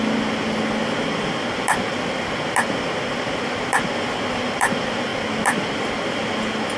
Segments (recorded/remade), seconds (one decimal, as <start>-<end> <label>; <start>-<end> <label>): 0.0-6.8 recorded

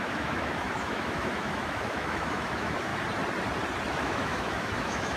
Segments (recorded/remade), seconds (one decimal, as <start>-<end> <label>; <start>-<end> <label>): 0.0-2.9 remade; 2.9-3.9 recorded; 3.9-5.2 remade

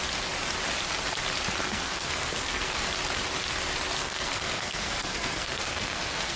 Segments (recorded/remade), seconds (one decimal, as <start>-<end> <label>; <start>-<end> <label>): 0.0-1.6 recorded; 1.6-2.9 remade; 2.9-4.0 recorded; 4.0-6.4 remade

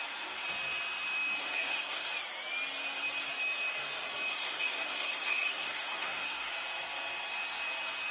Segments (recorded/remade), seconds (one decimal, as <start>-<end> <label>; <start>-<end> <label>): 0.0-1.4 recorded; 1.4-2.1 remade; 2.1-4.3 recorded; 4.3-6.5 remade; 6.5-8.1 recorded